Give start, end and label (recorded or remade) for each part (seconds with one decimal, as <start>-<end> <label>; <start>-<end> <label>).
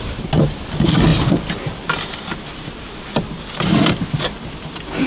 0.0-5.1 recorded